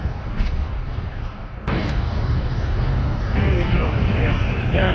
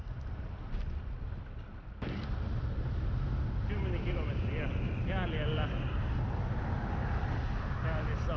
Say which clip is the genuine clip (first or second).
second